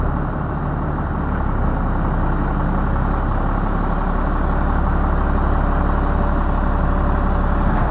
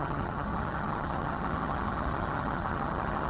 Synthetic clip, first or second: second